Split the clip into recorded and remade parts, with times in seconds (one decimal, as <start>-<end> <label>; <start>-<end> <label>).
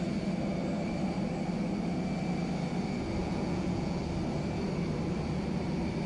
0.0-3.2 recorded; 3.2-4.0 remade; 4.0-6.1 recorded